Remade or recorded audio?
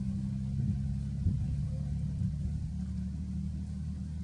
recorded